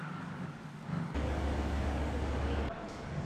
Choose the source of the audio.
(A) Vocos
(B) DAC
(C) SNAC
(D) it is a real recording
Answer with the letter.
B